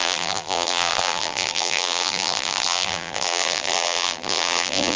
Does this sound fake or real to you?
fake